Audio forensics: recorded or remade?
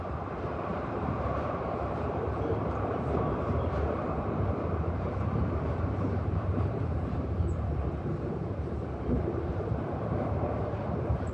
remade